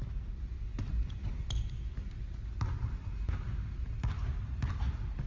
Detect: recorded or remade recorded